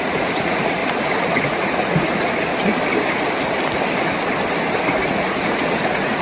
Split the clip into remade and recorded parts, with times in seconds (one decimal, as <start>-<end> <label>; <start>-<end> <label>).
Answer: 0.0-0.8 remade; 0.8-1.4 recorded; 1.4-2.5 remade; 2.5-4.9 recorded; 4.9-6.2 remade